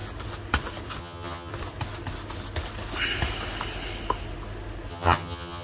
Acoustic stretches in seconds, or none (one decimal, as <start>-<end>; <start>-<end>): 0.0-1.0; 1.5-4.9